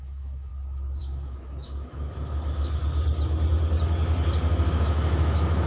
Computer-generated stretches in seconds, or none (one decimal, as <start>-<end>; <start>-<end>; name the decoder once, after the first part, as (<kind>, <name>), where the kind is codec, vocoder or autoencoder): 0.0-0.5 (autoencoder, DAC-VAE); 1.0-2.8; 4.7-5.7